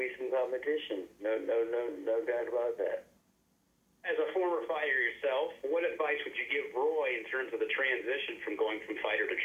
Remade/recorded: recorded